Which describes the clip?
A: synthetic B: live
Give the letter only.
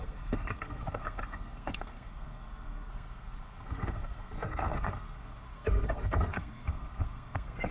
A